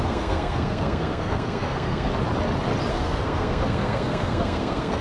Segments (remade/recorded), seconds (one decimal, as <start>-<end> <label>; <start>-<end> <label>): 0.0-2.1 remade; 2.1-2.9 recorded; 2.9-5.0 remade